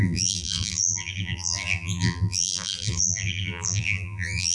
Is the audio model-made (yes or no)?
yes